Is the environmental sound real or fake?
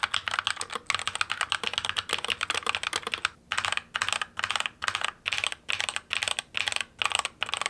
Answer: real